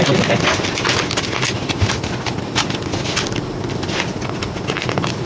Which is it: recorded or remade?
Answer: recorded